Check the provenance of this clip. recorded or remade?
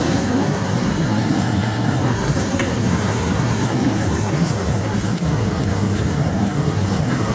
remade